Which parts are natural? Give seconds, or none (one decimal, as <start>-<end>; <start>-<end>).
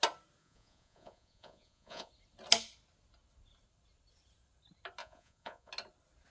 0.0-0.4; 2.1-5.0; 5.7-6.3